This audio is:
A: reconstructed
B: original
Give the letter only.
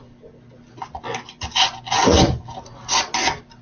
B